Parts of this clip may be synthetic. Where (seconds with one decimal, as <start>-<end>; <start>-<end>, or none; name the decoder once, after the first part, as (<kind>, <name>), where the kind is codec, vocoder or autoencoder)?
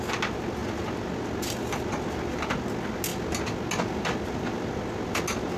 none